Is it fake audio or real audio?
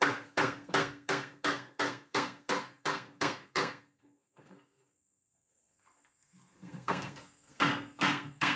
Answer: fake